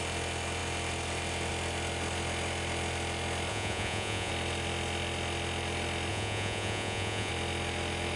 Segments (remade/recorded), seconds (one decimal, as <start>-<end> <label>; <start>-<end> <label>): 0.0-3.5 recorded; 3.5-4.3 remade; 4.3-6.1 recorded; 6.1-7.3 remade; 7.3-8.2 recorded

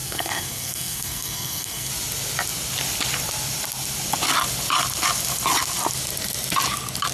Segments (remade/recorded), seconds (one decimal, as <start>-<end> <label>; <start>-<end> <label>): 0.0-1.9 remade; 1.9-7.1 recorded

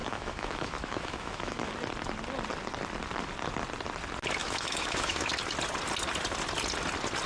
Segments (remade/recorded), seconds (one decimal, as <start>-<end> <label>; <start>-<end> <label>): 0.0-1.7 remade; 1.7-4.4 recorded; 4.4-5.3 remade; 5.3-7.3 recorded

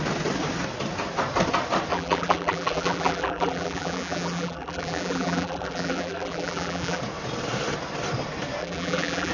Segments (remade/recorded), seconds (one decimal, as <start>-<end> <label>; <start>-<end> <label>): 0.0-1.9 recorded; 1.9-7.0 remade; 7.0-8.6 recorded; 8.6-9.3 remade

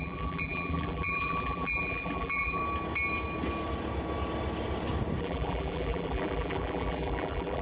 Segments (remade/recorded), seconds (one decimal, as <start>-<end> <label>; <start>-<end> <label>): 0.0-2.6 remade; 2.6-5.2 recorded; 5.2-7.6 remade

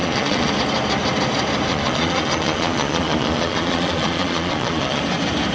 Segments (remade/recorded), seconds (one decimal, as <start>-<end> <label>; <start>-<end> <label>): 0.0-0.5 remade; 0.5-1.7 recorded; 1.7-5.0 remade; 5.0-5.5 recorded

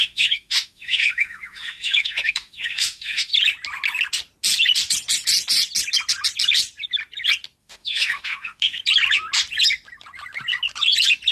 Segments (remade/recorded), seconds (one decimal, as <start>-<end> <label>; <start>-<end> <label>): 0.0-3.3 remade; 3.3-7.6 recorded; 7.6-8.8 remade; 8.8-11.3 recorded